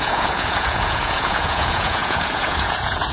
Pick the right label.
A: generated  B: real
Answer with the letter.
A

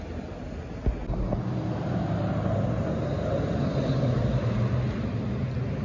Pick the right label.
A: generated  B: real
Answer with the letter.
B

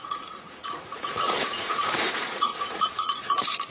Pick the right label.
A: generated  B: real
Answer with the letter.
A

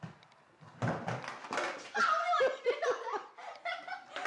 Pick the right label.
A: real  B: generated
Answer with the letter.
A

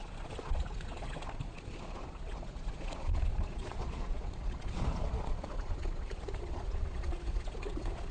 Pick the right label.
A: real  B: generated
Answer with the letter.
B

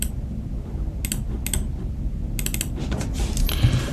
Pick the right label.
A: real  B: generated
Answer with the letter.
A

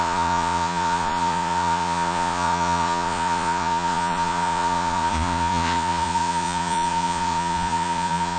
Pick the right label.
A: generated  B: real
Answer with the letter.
A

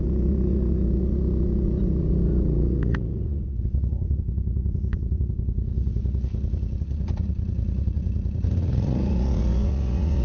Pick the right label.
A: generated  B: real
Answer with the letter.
A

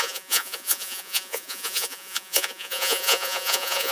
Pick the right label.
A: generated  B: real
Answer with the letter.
A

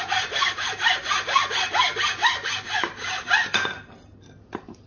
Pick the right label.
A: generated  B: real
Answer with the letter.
B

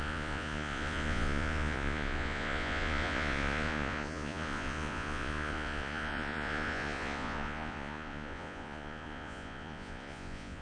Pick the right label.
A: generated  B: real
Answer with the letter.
A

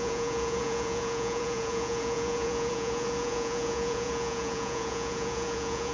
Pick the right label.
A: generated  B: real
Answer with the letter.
A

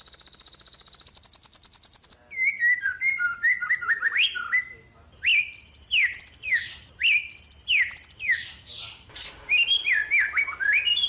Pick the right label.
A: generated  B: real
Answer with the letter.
B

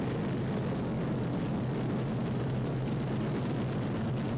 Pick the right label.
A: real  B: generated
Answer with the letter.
A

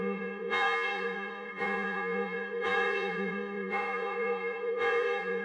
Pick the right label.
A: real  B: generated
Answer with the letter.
B